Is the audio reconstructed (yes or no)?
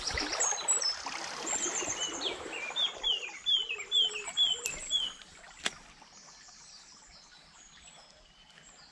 no